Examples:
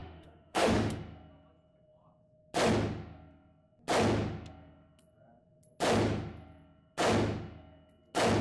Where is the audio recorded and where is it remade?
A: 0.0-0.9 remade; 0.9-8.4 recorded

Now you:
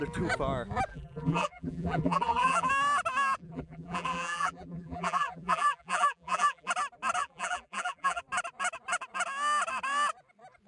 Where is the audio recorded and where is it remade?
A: 0.0-0.9 recorded; 0.9-2.7 remade; 2.7-3.4 recorded; 3.4-6.7 remade; 6.7-7.2 recorded; 7.2-8.2 remade; 8.2-10.7 recorded

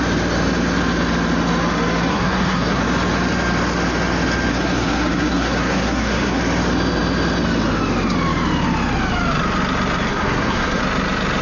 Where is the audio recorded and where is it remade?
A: 0.0-2.1 recorded; 2.1-2.8 remade; 2.8-4.5 recorded; 4.5-6.4 remade; 6.4-10.1 recorded; 10.1-10.8 remade; 10.8-11.4 recorded

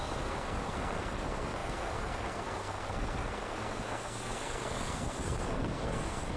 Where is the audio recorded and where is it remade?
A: 0.0-6.4 remade

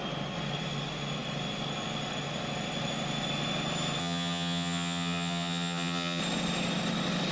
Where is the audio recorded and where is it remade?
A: 0.0-4.0 recorded; 4.0-6.2 remade; 6.2-7.3 recorded

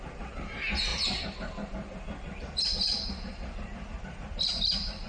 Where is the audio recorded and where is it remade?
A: 0.0-5.1 recorded

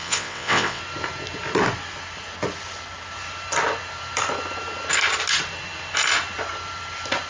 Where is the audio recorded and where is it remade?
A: 0.0-0.8 remade; 0.8-7.3 recorded

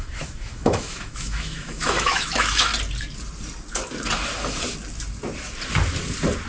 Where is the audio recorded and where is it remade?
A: 0.0-2.7 remade; 2.7-6.5 recorded